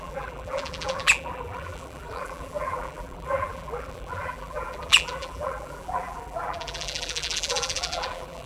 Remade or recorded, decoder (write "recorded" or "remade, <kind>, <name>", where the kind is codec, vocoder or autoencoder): remade, vocoder, BigVGAN v2